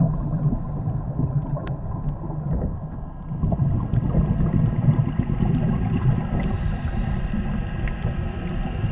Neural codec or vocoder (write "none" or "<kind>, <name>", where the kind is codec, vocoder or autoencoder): vocoder, BigVGAN v2